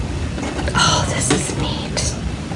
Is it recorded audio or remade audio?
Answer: recorded